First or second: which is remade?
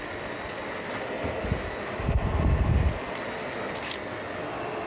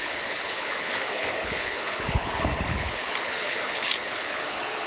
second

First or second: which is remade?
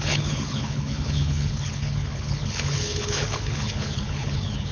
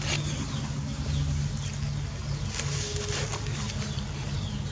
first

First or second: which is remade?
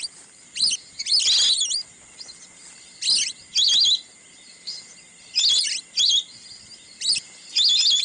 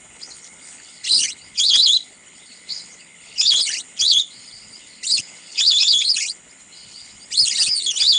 second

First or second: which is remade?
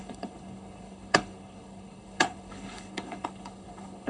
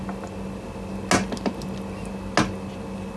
first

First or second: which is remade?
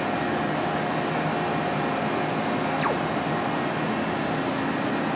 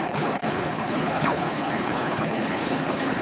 second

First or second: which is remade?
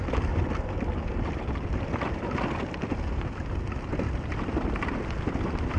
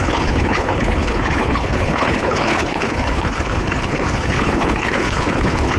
second